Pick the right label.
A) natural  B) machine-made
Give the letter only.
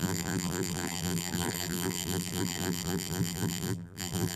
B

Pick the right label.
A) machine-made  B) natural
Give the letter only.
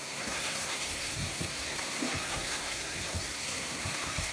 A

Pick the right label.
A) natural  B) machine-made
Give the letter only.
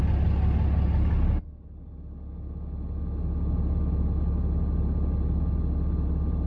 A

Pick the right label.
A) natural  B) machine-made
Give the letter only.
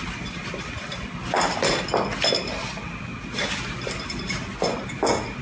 A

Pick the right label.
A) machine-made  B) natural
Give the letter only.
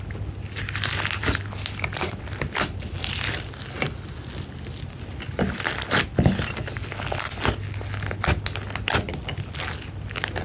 B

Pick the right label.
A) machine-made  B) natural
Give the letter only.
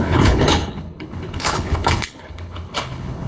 A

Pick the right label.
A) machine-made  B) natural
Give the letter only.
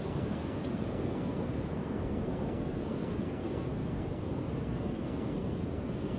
A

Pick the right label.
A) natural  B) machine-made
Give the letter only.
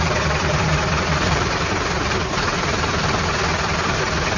B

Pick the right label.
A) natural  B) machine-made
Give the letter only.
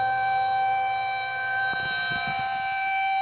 B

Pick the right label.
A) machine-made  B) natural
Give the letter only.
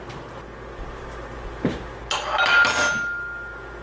B